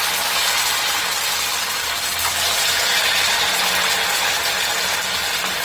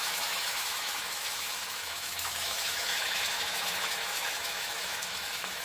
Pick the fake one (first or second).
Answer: second